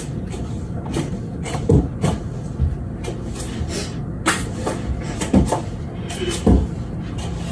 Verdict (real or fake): real